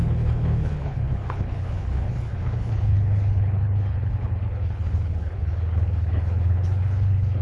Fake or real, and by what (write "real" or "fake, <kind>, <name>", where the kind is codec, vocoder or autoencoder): fake, codec, HILCodec